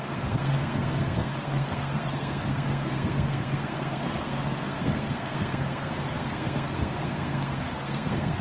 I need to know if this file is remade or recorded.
remade